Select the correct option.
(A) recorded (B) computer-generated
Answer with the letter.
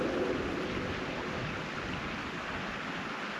A